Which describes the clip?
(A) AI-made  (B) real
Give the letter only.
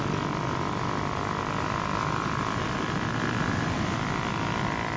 B